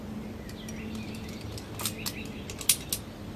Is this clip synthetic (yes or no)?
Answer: no